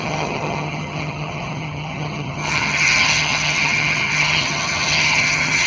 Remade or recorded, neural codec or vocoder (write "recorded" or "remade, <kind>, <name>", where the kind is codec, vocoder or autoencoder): remade, vocoder, HiFi-GAN